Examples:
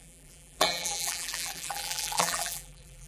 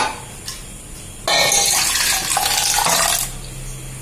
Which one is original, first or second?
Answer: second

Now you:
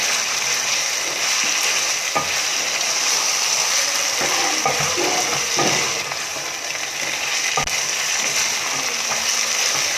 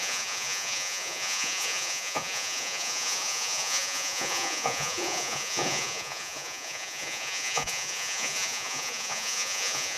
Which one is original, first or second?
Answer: first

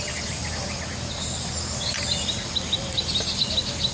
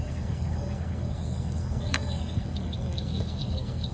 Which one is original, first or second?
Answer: first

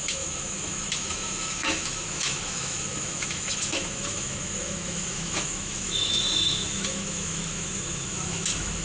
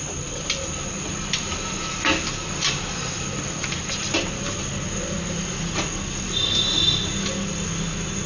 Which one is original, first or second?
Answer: second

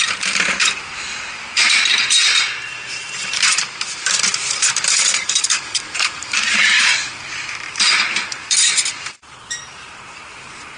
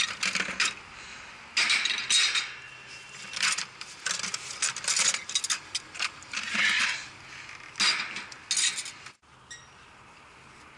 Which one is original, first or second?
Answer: second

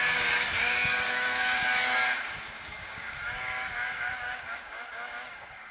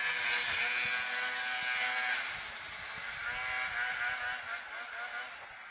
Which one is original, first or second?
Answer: second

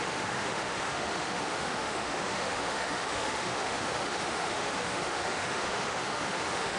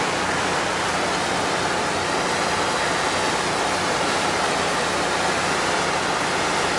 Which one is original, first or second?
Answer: second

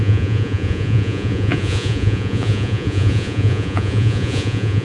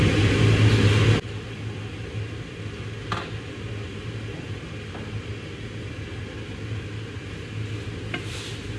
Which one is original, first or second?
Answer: second